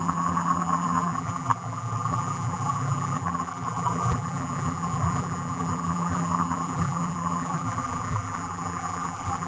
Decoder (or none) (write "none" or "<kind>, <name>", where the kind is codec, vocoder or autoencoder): vocoder, BigVGAN v2